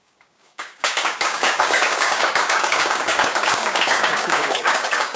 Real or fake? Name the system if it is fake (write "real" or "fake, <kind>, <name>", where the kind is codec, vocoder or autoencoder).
fake, codec, DAC